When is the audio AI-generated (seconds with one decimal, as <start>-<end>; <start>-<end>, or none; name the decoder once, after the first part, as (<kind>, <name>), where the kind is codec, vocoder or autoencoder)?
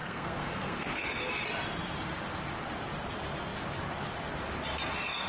0.0-1.3 (codec, SNAC)